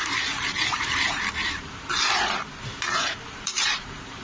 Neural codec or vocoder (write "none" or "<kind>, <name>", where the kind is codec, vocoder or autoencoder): vocoder, BigVGAN v2